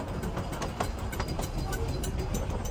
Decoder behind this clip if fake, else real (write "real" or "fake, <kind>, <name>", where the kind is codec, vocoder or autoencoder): real